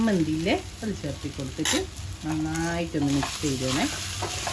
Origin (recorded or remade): recorded